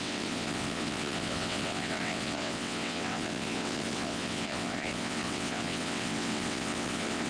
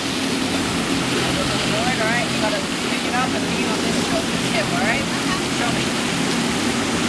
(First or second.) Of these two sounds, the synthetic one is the first